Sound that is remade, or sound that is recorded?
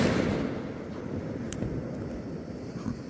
recorded